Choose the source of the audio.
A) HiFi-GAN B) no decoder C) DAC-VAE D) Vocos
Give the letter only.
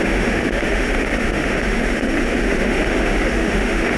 C